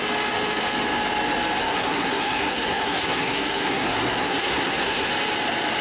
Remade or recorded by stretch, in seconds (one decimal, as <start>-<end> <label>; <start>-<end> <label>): 0.0-1.6 recorded; 1.6-5.1 remade; 5.1-5.8 recorded